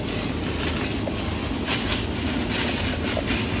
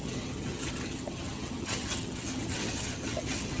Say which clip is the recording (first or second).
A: first